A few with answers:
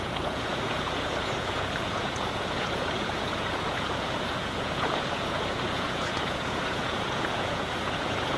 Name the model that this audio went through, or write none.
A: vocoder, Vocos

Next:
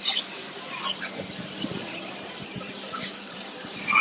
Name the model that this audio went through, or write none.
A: vocoder, BigVGAN v2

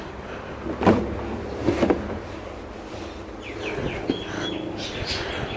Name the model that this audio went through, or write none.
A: none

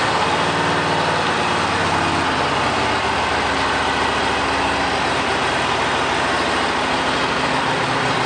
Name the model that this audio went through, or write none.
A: none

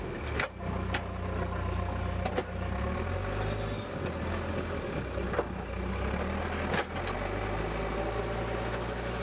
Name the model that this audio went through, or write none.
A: none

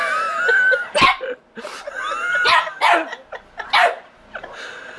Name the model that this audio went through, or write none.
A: none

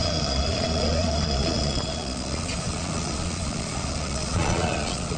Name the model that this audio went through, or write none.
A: vocoder, Vocos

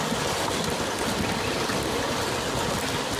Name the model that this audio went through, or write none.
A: none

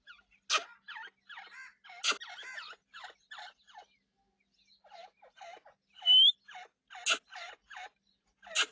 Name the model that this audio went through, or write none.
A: none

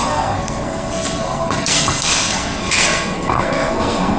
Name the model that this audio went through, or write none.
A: codec, SNAC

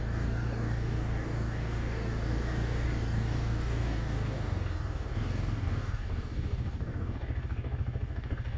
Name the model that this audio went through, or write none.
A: codec, DAC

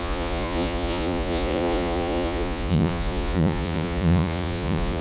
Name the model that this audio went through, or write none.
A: vocoder, Vocos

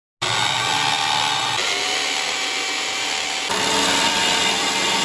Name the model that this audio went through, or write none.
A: none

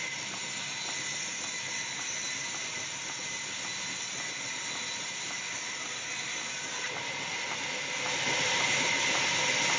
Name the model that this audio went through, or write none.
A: none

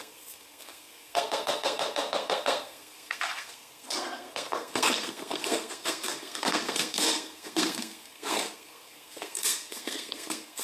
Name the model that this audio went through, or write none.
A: codec, SNAC